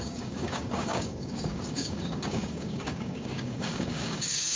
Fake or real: fake